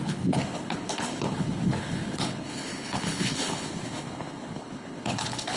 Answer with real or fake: fake